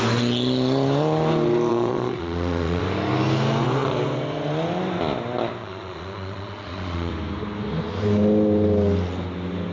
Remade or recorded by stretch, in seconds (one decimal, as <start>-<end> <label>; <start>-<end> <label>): 0.0-1.7 recorded; 1.7-2.8 remade; 2.8-5.6 recorded; 5.6-7.1 remade; 7.1-9.7 recorded